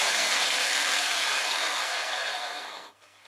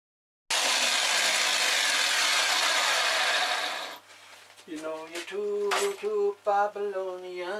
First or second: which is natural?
second